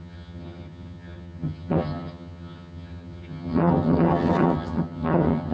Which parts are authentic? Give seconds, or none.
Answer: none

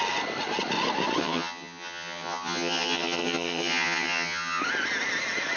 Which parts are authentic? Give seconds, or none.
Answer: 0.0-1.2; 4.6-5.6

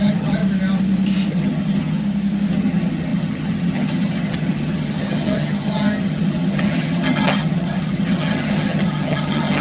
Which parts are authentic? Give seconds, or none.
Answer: 0.4-1.3; 2.0-2.5

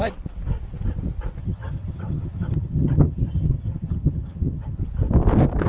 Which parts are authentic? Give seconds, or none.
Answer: 0.0-1.4; 4.8-5.7

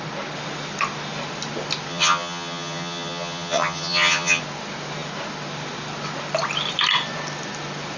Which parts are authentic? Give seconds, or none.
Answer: 0.0-1.9; 4.4-8.0